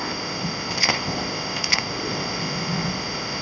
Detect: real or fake fake